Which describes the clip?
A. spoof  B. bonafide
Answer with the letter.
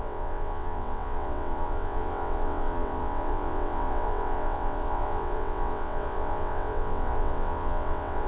A